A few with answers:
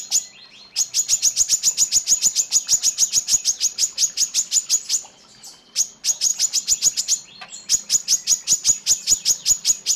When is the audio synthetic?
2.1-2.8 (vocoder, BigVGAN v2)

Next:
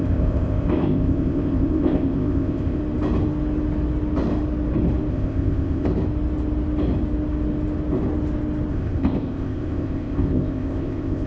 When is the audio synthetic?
0.0-2.8 (codec, ZipCodec); 5.1-5.9; 8.7-11.3

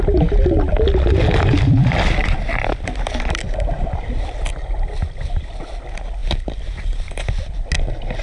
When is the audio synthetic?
1.8-4.6 (vocoder, BigVGAN v2); 6.2-7.1